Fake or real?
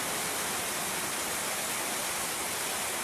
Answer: real